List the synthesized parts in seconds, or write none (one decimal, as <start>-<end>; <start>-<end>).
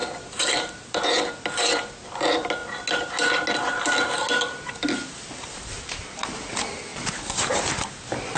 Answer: 0.0-1.0